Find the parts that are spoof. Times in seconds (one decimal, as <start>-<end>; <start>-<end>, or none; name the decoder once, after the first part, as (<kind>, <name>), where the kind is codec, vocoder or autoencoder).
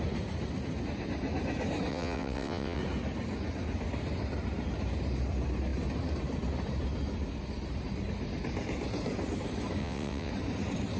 1.9-2.8 (vocoder, WaveNeXt); 9.8-10.3